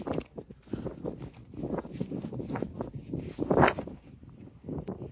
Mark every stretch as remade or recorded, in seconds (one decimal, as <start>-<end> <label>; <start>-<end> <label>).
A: 0.0-5.1 recorded